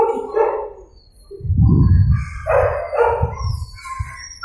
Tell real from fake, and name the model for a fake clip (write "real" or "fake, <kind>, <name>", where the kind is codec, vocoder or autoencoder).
real